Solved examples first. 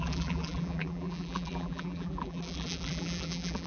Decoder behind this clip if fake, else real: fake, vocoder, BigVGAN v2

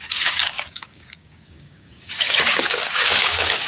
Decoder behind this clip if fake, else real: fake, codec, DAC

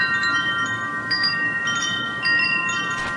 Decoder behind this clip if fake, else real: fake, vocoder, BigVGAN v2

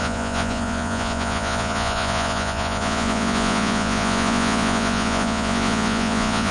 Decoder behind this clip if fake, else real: fake, vocoder, Vocos